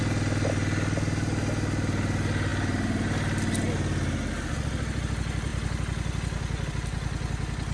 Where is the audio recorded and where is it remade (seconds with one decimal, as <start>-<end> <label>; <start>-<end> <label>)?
0.0-7.7 recorded

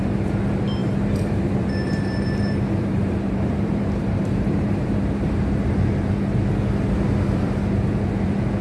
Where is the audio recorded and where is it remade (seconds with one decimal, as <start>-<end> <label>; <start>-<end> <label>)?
0.0-0.8 recorded; 0.8-5.7 remade; 5.7-8.6 recorded

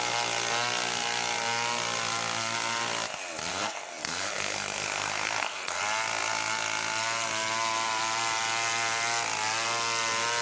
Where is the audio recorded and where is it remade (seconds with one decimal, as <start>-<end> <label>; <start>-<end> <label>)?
0.0-3.5 recorded; 3.5-5.8 remade; 5.8-10.4 recorded

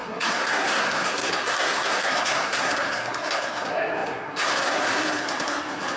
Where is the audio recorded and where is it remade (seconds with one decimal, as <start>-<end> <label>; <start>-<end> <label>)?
0.0-6.0 remade

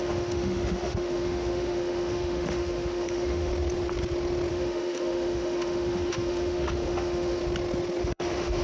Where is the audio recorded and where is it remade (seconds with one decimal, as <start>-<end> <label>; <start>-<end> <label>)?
0.0-3.5 remade; 3.5-4.5 recorded; 4.5-7.4 remade; 7.4-8.0 recorded; 8.0-8.6 remade